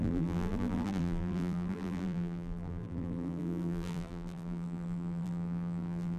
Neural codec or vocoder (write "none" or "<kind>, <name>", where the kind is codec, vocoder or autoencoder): vocoder, BigVGAN v2